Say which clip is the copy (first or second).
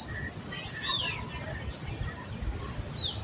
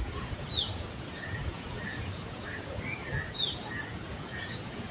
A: second